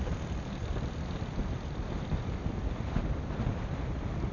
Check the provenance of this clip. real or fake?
real